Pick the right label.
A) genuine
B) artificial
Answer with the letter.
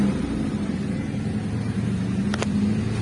A